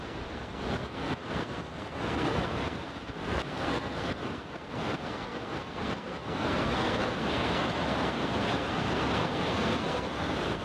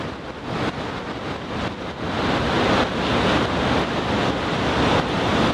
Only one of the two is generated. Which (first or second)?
first